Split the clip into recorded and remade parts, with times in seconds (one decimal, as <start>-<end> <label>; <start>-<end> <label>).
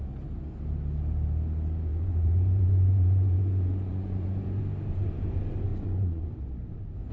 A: 0.0-1.9 recorded; 1.9-4.6 remade; 4.6-5.7 recorded; 5.7-6.4 remade; 6.4-7.1 recorded